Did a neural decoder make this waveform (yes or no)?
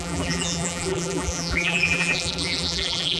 yes